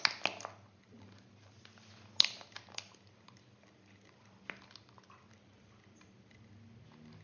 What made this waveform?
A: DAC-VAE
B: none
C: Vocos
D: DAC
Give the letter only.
B